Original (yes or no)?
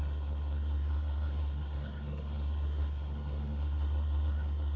no